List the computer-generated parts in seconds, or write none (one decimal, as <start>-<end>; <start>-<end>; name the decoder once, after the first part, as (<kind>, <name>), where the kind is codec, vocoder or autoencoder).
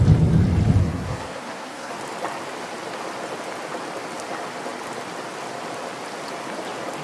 0.8-1.9 (codec, SNAC)